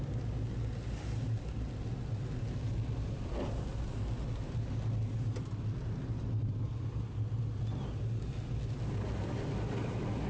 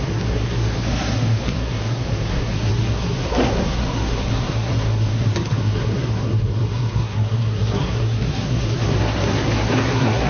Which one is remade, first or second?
second